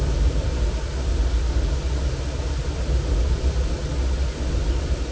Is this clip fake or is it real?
real